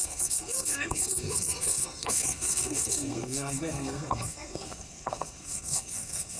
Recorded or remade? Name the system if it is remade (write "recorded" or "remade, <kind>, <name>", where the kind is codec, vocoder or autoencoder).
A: remade, codec, SNAC